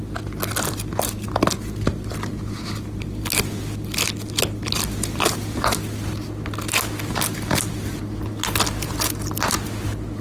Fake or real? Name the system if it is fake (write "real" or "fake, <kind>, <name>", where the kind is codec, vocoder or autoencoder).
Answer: real